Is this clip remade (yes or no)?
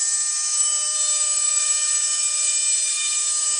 yes